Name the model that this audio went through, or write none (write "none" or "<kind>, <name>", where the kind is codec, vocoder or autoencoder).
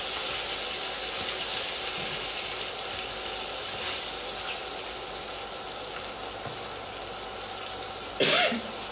none